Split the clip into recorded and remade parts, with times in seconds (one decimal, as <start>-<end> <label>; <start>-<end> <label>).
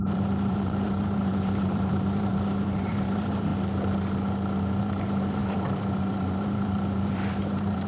0.0-3.5 remade; 3.5-4.8 recorded; 4.8-7.9 remade